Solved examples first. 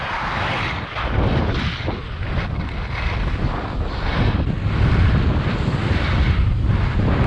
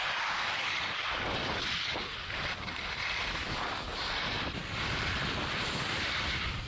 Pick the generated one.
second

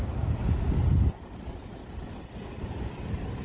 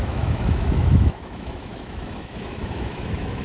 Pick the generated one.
second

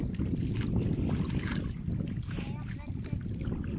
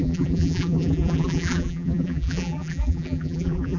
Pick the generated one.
second